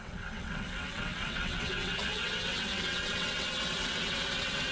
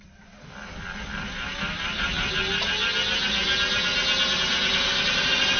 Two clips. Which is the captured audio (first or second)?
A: second